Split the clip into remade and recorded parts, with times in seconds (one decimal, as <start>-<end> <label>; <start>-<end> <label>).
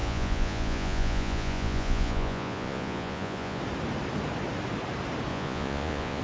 0.0-3.6 remade; 3.6-5.3 recorded; 5.3-6.2 remade